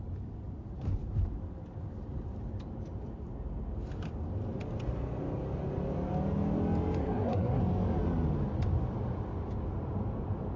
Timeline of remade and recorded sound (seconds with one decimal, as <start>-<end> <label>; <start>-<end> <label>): 0.0-7.0 recorded; 7.0-7.6 remade; 7.6-10.6 recorded